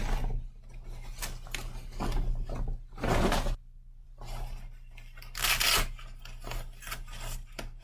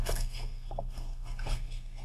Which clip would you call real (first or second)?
first